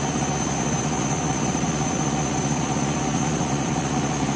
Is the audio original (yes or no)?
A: no